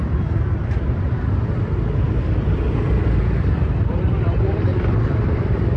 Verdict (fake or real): fake